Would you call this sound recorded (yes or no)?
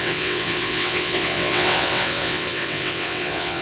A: no